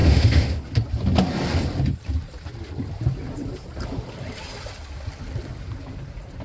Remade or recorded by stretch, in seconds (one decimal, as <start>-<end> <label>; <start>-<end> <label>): 0.0-0.6 remade; 0.6-6.4 recorded